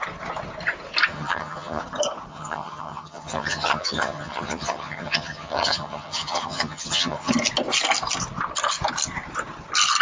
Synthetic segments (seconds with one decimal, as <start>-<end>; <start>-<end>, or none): 1.1-1.8; 2.3-7.3